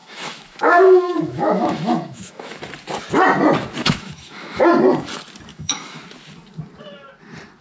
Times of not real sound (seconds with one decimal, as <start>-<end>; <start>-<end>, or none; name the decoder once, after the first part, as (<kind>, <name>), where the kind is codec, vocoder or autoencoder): 0.0-2.6 (autoencoder, DAC-VAE); 3.8-4.6; 5.5-6.0